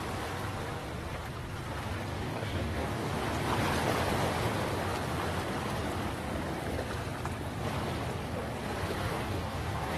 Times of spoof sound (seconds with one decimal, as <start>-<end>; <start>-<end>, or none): 2.1-3.1; 9.0-10.0